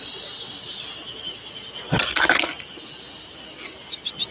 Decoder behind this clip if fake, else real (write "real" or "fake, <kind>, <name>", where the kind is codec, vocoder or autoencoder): real